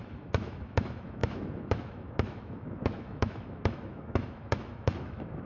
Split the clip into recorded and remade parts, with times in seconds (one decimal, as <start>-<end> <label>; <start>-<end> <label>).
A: 0.0-5.5 remade